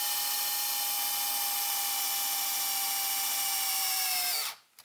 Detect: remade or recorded recorded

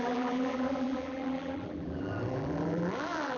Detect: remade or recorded remade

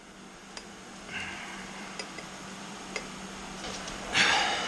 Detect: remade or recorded remade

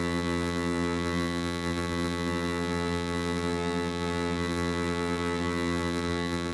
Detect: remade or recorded remade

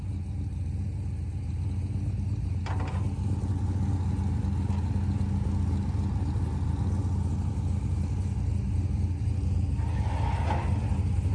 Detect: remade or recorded recorded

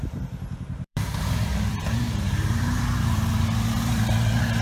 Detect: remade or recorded remade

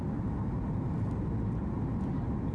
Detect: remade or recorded recorded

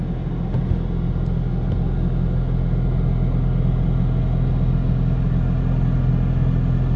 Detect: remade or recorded recorded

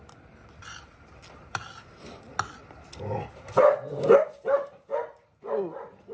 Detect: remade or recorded recorded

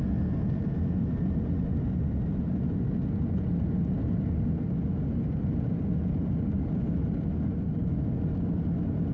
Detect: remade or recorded recorded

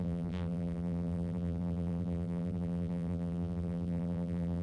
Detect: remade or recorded remade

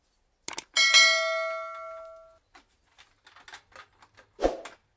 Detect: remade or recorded recorded